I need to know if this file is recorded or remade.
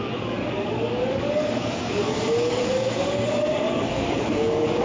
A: remade